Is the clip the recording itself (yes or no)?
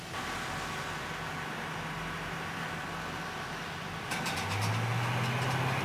yes